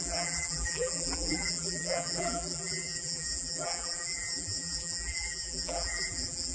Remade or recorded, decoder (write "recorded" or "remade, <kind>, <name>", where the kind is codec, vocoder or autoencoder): remade, vocoder, BigVGAN v2